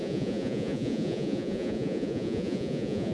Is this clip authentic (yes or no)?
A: no